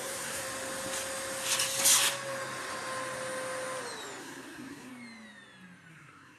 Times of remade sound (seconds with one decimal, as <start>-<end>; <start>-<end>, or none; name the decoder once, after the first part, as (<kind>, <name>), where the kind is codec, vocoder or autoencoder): 0.0-0.4 (codec, SNAC); 4.2-4.9; 5.9-6.4